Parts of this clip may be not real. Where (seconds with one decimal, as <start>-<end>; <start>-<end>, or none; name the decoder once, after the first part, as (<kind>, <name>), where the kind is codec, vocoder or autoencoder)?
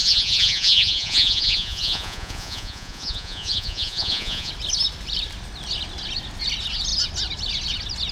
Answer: 0.0-4.5 (vocoder, Vocos)